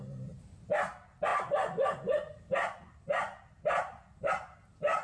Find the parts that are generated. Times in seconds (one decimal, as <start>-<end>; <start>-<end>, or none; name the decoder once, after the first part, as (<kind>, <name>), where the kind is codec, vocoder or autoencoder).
none